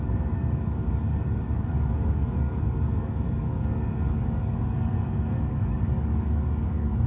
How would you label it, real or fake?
fake